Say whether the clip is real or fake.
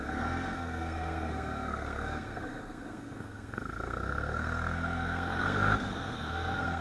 fake